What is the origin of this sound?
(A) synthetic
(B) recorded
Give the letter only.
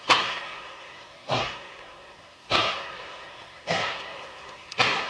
A